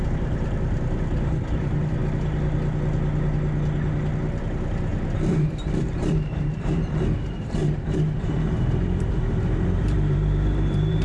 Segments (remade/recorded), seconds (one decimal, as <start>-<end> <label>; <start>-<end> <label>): 0.0-2.0 remade; 2.0-4.4 recorded; 4.4-11.0 remade